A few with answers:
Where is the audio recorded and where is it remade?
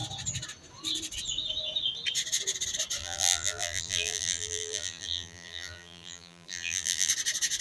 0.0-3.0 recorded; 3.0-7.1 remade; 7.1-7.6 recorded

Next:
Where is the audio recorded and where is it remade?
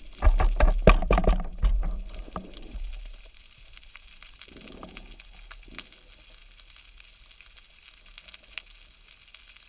0.0-1.0 recorded; 1.0-4.4 remade; 4.4-9.7 recorded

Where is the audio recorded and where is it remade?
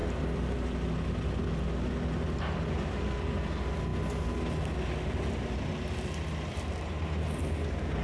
0.0-0.6 remade; 0.6-8.0 recorded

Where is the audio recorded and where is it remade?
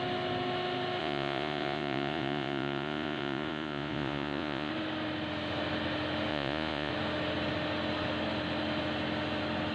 0.0-1.0 recorded; 1.0-4.7 remade; 4.7-6.3 recorded; 6.3-6.9 remade; 6.9-9.7 recorded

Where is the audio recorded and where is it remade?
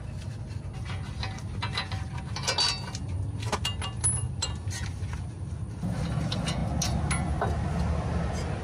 0.0-8.6 recorded